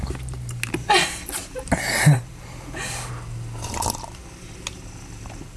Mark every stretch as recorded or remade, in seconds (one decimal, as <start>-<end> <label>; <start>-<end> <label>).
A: 0.0-0.8 recorded; 0.8-3.1 remade; 3.1-5.6 recorded